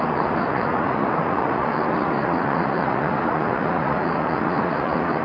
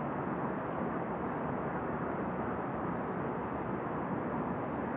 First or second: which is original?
second